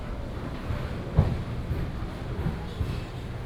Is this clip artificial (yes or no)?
no